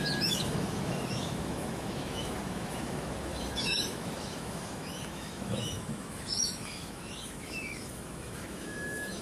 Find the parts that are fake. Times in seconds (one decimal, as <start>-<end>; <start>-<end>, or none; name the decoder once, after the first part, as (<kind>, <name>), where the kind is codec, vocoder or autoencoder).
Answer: 0.0-9.2 (autoencoder, DAC-VAE)